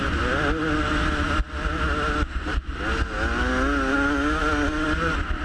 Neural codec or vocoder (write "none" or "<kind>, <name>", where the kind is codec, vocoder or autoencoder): none